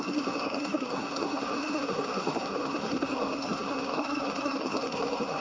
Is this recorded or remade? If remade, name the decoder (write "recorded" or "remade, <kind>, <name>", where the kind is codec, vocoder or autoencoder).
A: remade, codec, SNAC